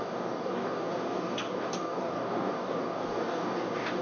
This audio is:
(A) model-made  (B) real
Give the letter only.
A